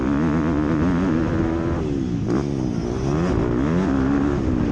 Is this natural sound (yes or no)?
yes